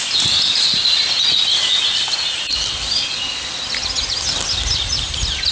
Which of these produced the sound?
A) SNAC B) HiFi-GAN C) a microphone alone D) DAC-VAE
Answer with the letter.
C